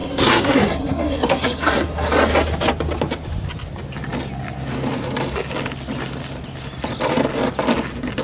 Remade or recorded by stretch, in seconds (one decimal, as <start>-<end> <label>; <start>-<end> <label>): 0.0-2.1 remade; 2.1-8.2 recorded